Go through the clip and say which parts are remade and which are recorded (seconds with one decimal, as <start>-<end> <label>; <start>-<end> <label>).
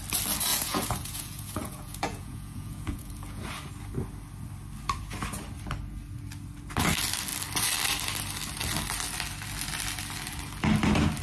0.0-0.5 recorded; 0.5-3.4 remade; 3.4-11.2 recorded